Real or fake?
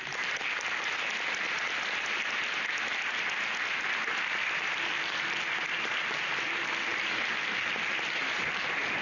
real